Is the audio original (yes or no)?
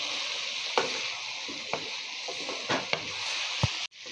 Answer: yes